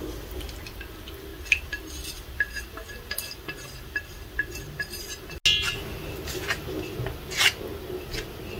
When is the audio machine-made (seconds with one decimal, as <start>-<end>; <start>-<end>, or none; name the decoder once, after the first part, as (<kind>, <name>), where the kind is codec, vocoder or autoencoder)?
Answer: none